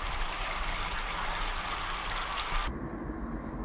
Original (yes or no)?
yes